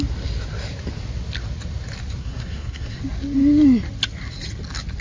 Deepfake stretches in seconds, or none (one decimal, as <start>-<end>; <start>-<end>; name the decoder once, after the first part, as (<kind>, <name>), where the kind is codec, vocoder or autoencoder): 2.2-3.0 (codec, SNAC)